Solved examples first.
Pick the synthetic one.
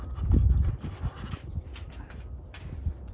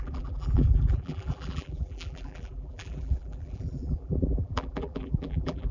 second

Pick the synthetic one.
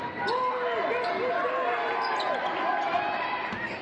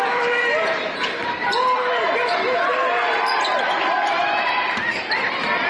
second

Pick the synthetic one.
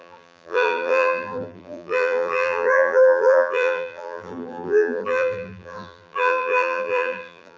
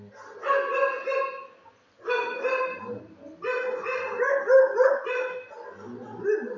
first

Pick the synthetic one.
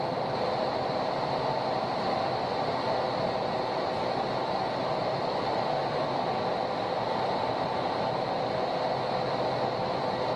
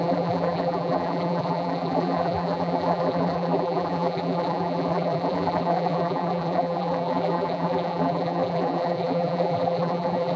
second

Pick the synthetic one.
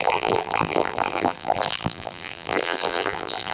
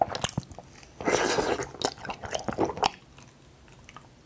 first